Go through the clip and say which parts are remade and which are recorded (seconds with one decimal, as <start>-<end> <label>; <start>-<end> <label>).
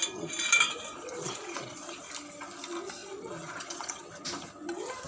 0.0-0.9 recorded; 0.9-2.0 remade; 2.0-3.0 recorded; 3.0-4.0 remade; 4.0-5.1 recorded